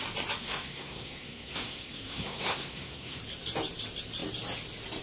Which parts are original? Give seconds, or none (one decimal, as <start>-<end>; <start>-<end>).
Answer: 0.0-0.4; 3.2-5.0